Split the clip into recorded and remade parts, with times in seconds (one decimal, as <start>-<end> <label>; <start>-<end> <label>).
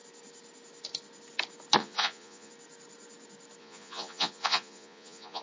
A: 0.0-1.8 recorded; 1.8-2.5 remade; 2.5-3.6 recorded; 3.6-5.4 remade